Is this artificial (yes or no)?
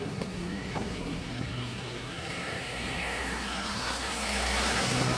yes